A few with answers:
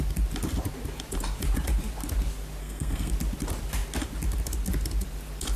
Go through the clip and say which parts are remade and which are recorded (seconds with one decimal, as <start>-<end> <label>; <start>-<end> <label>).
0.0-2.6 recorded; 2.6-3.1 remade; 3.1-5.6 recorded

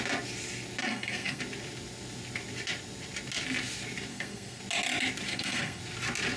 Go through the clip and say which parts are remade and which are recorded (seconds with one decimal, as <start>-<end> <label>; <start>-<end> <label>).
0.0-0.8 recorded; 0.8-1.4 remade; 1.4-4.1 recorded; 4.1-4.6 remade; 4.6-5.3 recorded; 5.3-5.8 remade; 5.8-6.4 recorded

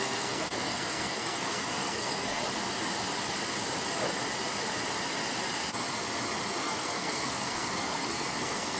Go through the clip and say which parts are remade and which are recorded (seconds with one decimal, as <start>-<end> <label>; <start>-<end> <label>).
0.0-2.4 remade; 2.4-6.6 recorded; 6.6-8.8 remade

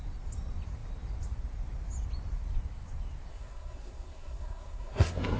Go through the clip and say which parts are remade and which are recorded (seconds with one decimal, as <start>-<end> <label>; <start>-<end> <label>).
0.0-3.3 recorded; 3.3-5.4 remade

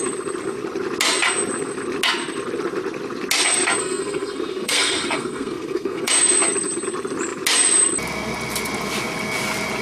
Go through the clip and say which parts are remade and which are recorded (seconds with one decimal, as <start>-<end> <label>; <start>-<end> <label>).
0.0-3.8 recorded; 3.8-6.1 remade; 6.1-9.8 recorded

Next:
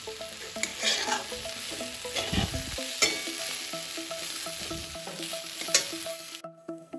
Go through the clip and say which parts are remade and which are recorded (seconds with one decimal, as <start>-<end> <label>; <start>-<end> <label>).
0.0-6.1 recorded; 6.1-7.0 remade